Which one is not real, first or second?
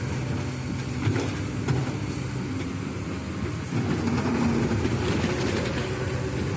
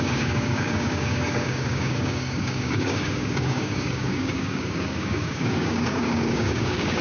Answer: second